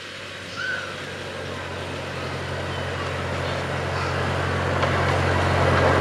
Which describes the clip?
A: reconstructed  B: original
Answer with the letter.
B